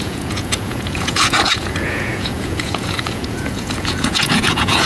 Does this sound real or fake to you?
fake